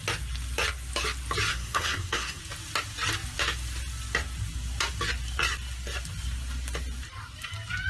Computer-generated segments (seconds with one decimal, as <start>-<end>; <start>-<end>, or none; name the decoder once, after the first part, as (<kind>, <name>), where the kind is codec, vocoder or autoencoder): 1.5-2.4 (codec, SNAC)